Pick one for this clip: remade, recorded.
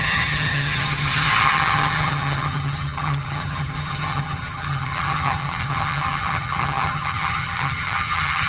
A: remade